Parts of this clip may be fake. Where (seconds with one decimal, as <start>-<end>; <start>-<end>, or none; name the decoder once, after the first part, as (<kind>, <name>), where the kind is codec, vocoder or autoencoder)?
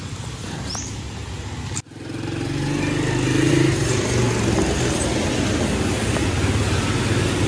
none